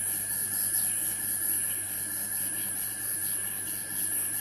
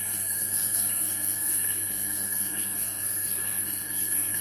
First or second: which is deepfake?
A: second